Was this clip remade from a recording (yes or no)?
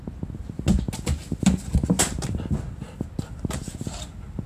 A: no